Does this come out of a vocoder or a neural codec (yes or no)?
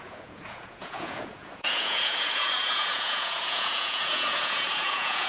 yes